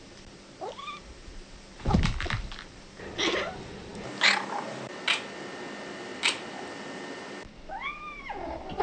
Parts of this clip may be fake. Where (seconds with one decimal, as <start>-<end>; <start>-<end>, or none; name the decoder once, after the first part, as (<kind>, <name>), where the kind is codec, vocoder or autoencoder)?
none